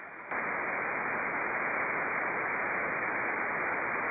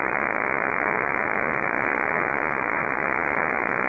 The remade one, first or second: second